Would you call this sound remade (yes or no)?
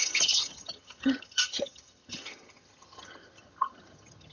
yes